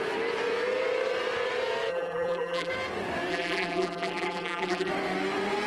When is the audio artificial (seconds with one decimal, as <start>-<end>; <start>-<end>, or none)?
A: 1.9-2.7; 3.3-4.9